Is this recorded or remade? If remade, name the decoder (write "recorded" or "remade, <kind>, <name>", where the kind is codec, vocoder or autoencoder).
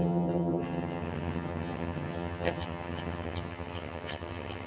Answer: remade, vocoder, HiFi-GAN